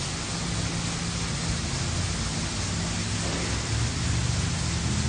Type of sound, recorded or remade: recorded